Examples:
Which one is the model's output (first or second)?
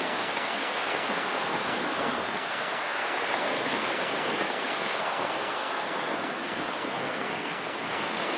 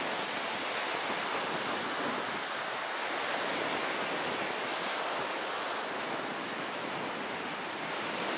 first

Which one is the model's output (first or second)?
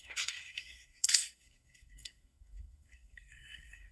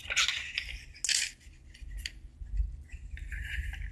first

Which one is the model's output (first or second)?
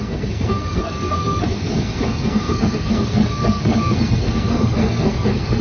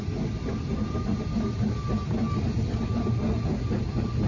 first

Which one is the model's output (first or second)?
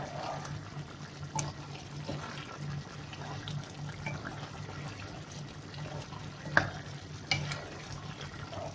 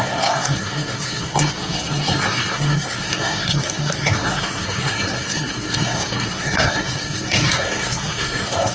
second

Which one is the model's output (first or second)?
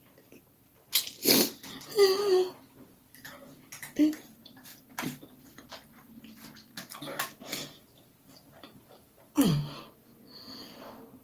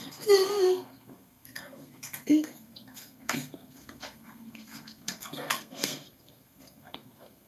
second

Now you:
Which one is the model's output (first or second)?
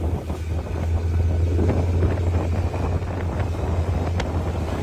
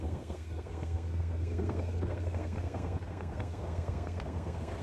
second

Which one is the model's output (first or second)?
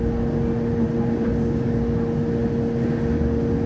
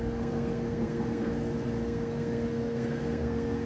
second